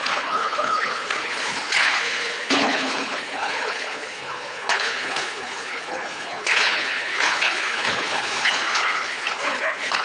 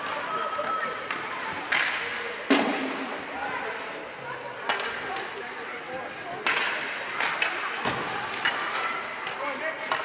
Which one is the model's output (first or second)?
first